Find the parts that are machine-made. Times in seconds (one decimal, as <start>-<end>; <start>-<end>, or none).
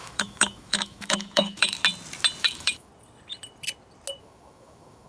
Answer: 0.0-1.8; 2.4-2.9; 4.2-5.1